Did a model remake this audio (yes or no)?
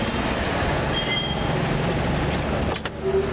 no